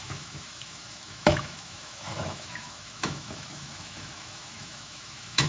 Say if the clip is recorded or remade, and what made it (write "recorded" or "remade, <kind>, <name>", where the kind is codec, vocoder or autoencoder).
remade, autoencoder, DAC-VAE